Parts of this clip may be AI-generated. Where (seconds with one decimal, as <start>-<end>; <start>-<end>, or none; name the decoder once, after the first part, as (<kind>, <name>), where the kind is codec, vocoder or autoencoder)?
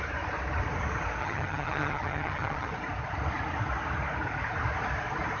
1.2-2.7 (vocoder, HiFi-GAN)